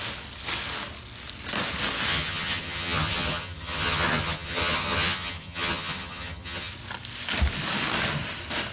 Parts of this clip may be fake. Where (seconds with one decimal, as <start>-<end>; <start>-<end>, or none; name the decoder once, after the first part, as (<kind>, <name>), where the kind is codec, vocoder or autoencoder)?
2.1-6.7 (vocoder, HiFi-GAN)